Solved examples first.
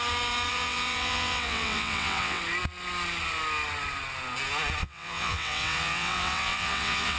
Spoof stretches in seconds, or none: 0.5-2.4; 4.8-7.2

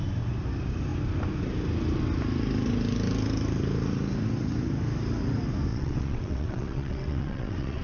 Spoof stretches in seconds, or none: 5.7-7.8